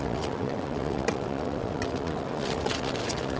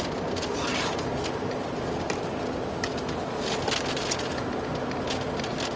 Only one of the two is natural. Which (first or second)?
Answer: second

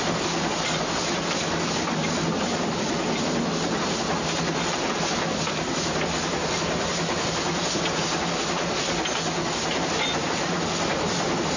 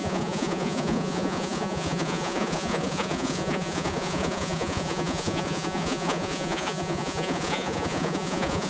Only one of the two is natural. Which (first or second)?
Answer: first